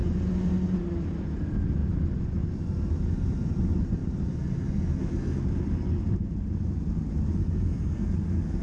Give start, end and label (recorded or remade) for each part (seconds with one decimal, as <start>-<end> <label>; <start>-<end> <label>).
0.0-7.4 recorded; 7.4-8.1 remade; 8.1-8.6 recorded